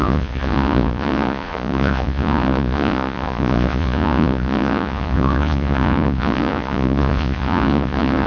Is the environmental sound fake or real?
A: fake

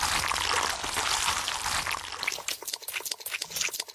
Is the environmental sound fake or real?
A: real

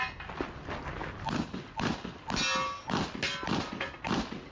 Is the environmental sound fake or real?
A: real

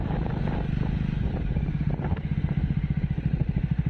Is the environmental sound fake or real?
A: real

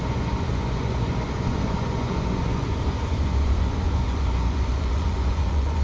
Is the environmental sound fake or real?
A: fake